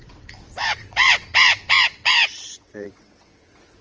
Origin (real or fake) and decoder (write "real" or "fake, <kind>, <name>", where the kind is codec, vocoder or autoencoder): fake, vocoder, WaveNeXt